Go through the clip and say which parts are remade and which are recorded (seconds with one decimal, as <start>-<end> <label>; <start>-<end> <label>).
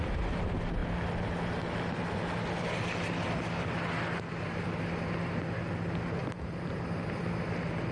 0.0-6.2 recorded; 6.2-6.8 remade; 6.8-7.9 recorded